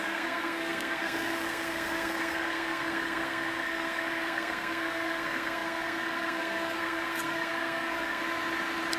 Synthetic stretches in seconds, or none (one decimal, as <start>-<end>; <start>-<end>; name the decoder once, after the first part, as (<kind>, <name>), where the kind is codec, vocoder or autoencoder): 0.0-8.2 (codec, SNAC)